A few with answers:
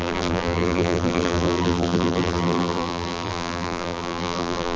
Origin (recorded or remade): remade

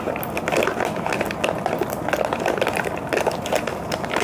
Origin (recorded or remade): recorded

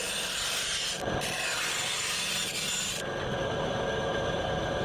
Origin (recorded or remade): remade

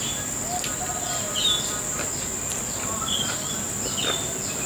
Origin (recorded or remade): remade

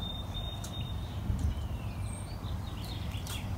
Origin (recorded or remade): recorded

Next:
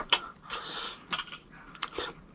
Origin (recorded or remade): remade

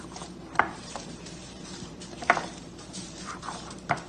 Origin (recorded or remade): remade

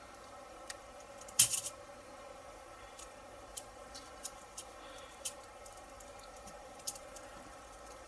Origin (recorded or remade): remade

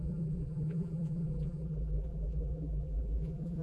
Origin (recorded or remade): remade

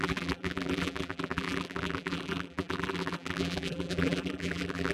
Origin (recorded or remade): remade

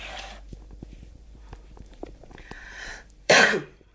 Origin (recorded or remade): remade